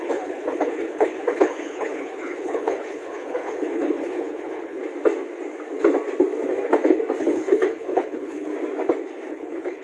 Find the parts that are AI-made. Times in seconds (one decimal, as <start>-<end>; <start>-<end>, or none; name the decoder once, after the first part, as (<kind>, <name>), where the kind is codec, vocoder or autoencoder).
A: 0.0-4.8 (codec, HILCodec); 7.2-8.5; 9.3-9.8